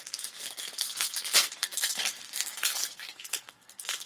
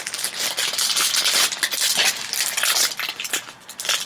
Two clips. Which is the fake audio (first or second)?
first